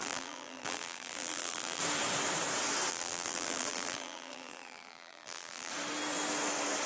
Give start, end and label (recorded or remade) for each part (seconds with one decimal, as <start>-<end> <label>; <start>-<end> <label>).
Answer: 0.0-1.8 remade; 1.8-2.9 recorded; 2.9-5.7 remade; 5.7-6.9 recorded